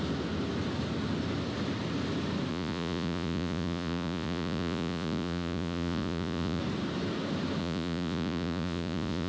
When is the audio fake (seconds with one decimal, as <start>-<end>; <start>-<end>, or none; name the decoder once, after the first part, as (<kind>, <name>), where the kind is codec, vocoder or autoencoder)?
2.5-6.6 (vocoder, Vocos); 7.6-9.3